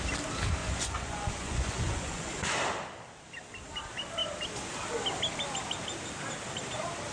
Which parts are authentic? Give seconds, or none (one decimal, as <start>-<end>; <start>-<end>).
0.0-0.6; 2.3-7.1